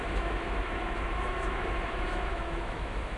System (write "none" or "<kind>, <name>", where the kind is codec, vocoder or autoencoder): autoencoder, DAC-VAE